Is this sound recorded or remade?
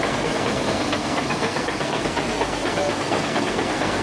remade